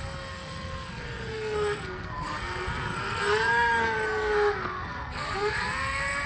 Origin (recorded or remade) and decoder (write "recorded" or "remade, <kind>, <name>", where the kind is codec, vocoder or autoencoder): remade, codec, SNAC